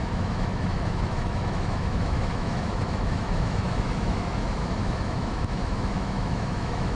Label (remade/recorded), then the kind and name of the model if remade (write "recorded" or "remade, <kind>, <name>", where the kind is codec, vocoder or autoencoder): remade, autoencoder, DAC-VAE